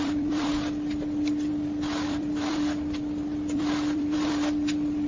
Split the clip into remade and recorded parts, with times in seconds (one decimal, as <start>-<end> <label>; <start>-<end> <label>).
0.0-0.5 remade; 0.5-1.5 recorded; 1.5-5.1 remade